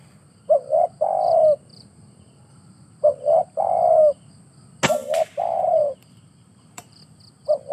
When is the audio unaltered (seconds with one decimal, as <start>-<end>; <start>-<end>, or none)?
0.0-1.7; 4.3-5.0; 7.0-7.7